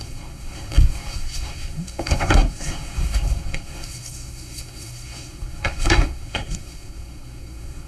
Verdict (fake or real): fake